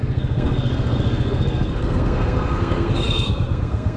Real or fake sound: fake